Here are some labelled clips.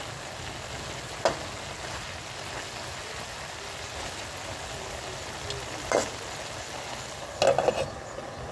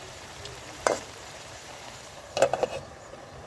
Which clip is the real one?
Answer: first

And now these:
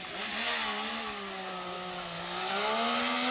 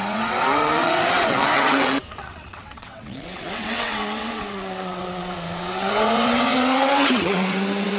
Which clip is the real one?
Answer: first